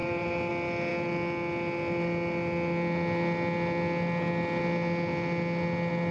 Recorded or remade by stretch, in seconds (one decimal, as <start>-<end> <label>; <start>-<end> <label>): 0.0-0.5 remade; 0.5-6.1 recorded